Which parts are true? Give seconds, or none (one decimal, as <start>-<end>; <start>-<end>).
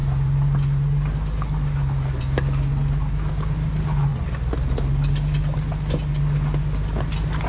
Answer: 0.0-7.5